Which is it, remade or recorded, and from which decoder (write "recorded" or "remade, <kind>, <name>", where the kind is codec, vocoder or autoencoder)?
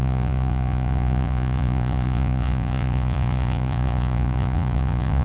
remade, vocoder, Vocos